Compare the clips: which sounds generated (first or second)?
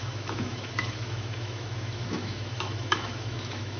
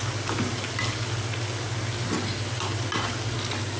first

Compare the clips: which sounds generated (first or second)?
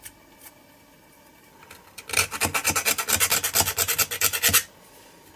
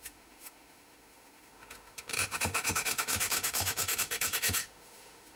second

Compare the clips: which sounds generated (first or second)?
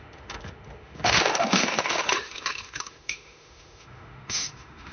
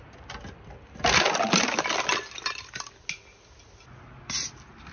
first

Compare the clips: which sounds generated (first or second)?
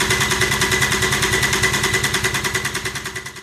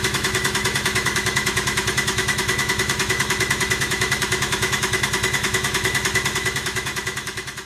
second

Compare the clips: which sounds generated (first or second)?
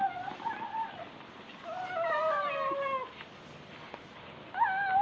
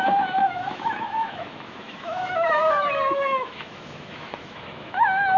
second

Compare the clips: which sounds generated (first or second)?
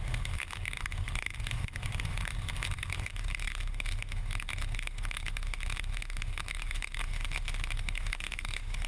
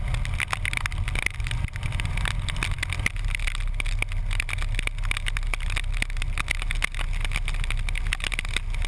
first